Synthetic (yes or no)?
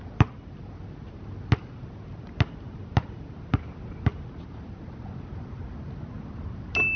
no